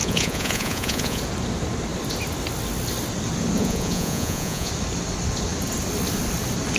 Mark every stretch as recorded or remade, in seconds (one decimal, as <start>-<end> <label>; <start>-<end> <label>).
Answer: 0.0-1.2 remade; 1.2-3.6 recorded; 3.6-4.7 remade; 4.7-6.8 recorded